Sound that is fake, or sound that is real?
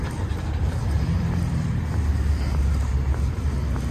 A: fake